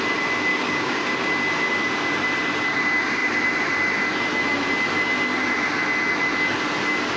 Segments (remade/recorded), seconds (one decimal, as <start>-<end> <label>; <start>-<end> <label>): 0.0-0.5 recorded; 0.5-1.1 remade; 1.1-7.2 recorded